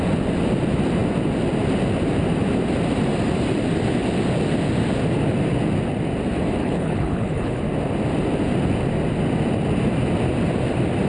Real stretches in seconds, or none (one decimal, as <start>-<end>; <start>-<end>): 0.0-6.6; 7.6-11.1